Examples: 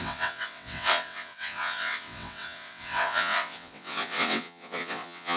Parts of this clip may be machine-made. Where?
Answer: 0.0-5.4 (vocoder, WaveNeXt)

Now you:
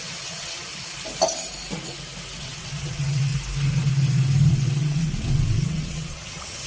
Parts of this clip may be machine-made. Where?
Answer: 0.0-0.7 (vocoder, WaveNeXt); 2.4-3.3; 4.5-6.7